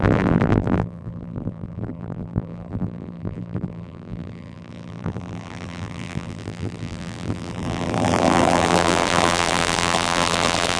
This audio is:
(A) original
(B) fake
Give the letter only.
B